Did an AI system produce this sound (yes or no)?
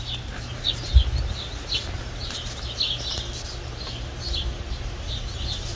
no